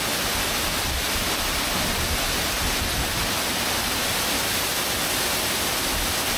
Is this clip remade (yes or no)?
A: no